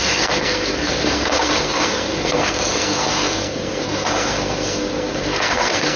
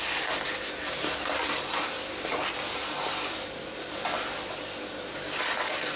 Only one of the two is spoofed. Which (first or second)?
first